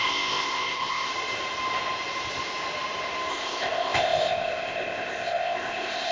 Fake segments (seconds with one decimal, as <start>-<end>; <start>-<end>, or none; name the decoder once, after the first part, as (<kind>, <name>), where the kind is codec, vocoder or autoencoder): 0.0-1.1 (codec, ZipCodec); 3.3-6.1